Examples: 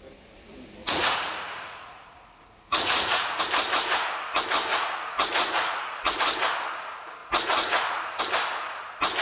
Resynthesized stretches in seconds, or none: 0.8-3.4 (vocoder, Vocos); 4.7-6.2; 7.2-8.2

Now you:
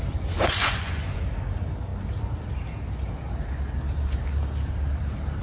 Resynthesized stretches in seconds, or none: 0.6-1.2 (vocoder, Vocos)

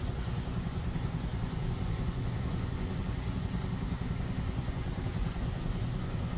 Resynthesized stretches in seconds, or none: 0.0-6.4 (vocoder, Vocos)

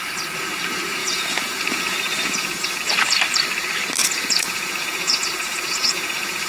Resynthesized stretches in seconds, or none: 1.0-2.8 (vocoder, Vocos); 4.0-6.5

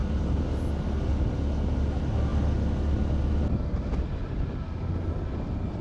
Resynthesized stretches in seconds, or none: none

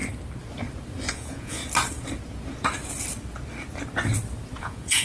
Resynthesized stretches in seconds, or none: 1.1-1.6 (vocoder, Vocos); 4.6-5.0

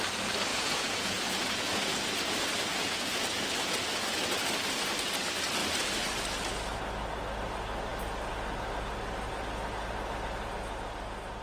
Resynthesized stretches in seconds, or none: 0.5-1.7 (vocoder, Vocos); 2.7-3.2